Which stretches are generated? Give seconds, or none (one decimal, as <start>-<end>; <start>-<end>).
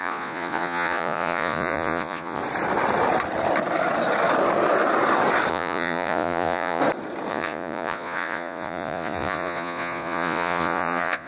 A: 0.0-2.4; 5.5-6.8; 7.3-11.3